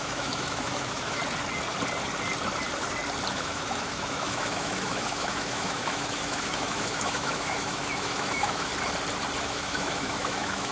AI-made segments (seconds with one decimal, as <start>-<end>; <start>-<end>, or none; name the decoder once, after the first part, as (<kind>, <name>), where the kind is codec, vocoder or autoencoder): 0.0-1.2 (autoencoder, DAC-VAE); 3.3-8.7; 9.4-10.7